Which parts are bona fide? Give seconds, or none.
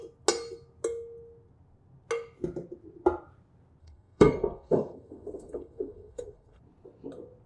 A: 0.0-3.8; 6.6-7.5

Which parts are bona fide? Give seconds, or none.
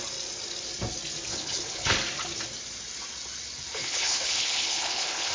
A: 0.0-1.3; 1.9-3.8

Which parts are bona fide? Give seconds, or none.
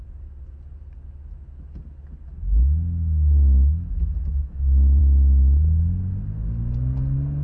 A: 0.0-4.3; 5.0-7.4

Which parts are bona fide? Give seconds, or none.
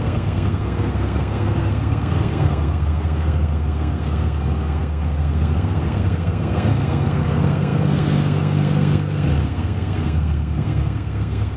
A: none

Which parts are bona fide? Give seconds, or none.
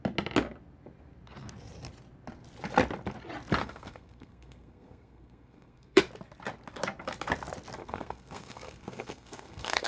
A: 0.0-3.6; 6.0-7.8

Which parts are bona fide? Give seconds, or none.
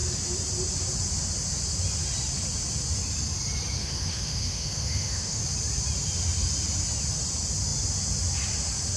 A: 0.0-3.8; 5.4-9.0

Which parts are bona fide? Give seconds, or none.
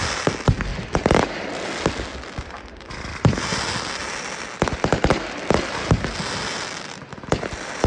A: 0.0-7.9